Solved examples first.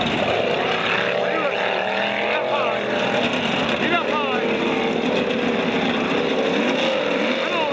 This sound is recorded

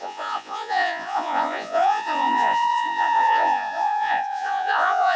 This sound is remade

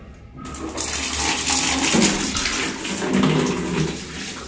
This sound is recorded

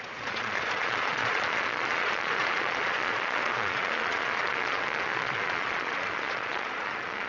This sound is remade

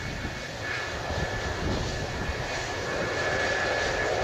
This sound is recorded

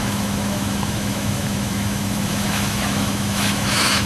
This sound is remade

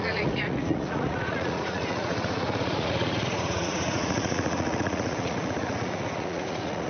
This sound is remade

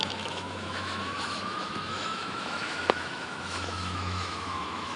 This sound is remade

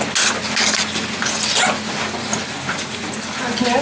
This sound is recorded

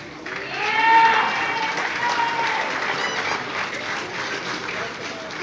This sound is recorded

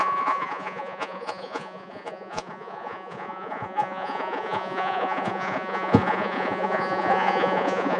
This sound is remade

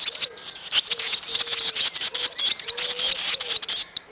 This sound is recorded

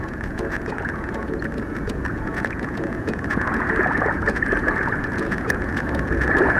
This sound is remade